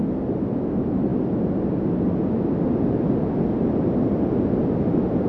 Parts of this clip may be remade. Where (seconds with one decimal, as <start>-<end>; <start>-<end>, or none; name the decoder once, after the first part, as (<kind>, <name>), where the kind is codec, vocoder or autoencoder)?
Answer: none